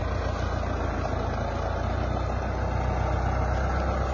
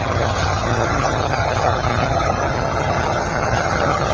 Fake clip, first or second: second